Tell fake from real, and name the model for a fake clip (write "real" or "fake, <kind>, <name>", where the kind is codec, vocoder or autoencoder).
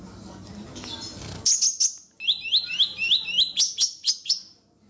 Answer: real